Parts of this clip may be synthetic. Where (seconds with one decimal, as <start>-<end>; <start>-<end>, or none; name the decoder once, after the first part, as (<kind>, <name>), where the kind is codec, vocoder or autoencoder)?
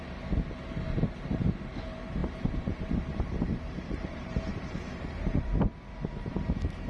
2.2-6.3 (vocoder, BigVGAN v2)